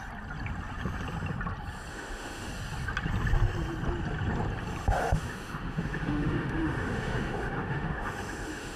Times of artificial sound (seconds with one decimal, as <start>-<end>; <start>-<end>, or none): 1.9-2.5; 5.0-8.8